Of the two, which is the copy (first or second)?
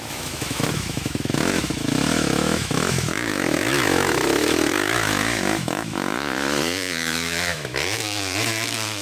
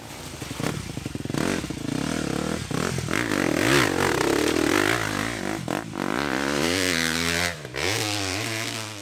first